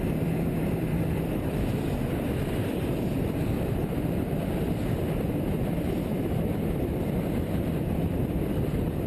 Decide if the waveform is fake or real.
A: fake